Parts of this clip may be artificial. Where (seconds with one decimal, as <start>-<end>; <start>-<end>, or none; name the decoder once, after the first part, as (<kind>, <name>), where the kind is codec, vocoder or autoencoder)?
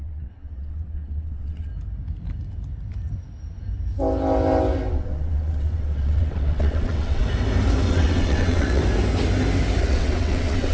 0.0-1.7 (vocoder, WaveNeXt); 4.9-7.2; 7.9-8.8; 9.8-10.7